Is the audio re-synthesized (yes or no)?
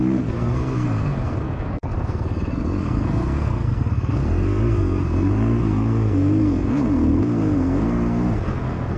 yes